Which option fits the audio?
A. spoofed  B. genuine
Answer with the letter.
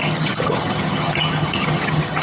A